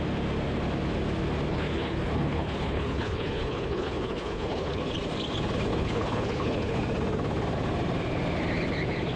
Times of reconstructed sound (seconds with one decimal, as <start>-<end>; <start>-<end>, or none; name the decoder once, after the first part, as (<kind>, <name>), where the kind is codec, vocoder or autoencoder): 1.5-4.8 (codec, HILCodec); 5.7-6.8